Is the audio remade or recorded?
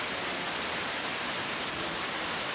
recorded